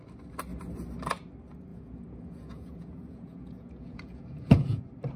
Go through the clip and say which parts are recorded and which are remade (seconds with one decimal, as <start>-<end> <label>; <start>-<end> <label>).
0.0-1.7 recorded; 1.7-4.8 remade; 4.8-5.2 recorded